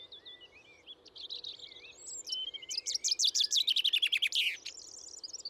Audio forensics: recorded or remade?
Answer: recorded